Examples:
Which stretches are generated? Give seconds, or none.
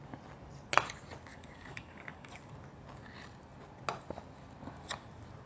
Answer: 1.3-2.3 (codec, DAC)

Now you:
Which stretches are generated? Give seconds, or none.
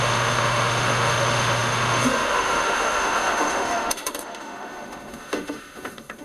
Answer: 0.0-6.2 (autoencoder, DAC-VAE)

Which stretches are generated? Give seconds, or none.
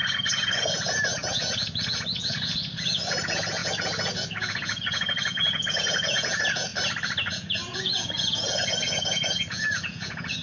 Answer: 0.0-6.7 (vocoder, Vocos); 7.3-10.4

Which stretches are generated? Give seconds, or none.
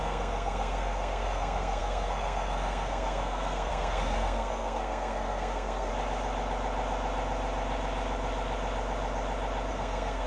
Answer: 0.0-5.9 (codec, SNAC); 9.7-10.3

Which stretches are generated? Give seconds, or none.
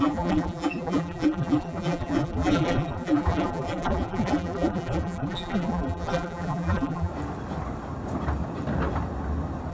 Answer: 0.0-7.1 (vocoder, BigVGAN v2)